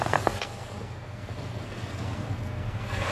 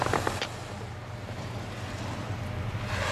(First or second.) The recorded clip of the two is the second